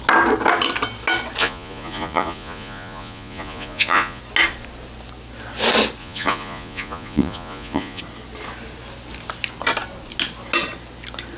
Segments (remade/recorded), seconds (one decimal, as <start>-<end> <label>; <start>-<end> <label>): 0.0-1.4 recorded; 1.4-4.2 remade; 4.2-6.0 recorded; 6.0-8.0 remade; 8.0-11.4 recorded